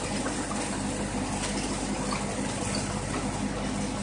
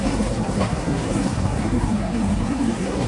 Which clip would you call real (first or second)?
first